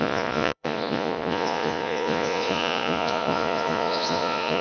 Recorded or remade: remade